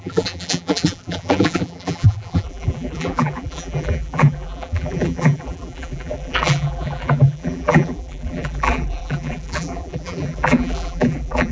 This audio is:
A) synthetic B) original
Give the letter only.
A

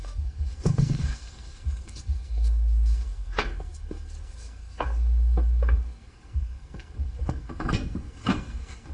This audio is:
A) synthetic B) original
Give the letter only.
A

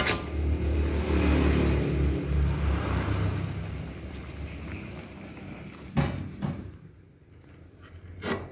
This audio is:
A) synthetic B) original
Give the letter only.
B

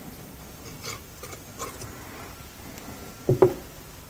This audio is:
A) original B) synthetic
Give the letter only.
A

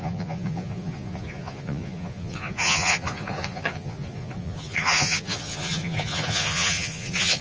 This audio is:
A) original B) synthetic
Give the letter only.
B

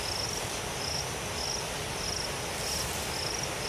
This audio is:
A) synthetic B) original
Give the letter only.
B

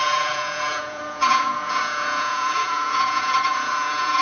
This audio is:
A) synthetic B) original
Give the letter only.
A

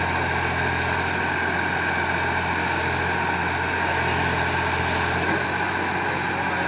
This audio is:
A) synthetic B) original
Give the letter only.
B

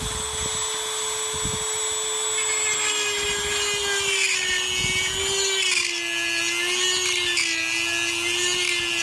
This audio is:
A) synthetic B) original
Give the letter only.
B